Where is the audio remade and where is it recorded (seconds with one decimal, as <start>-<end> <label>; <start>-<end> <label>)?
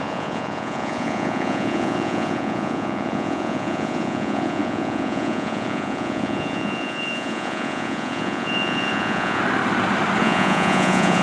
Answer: 0.0-9.4 remade; 9.4-10.2 recorded; 10.2-11.2 remade